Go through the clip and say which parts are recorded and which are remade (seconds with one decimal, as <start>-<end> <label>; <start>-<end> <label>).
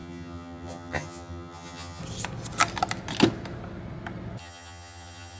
0.0-2.0 remade; 2.0-4.4 recorded; 4.4-5.4 remade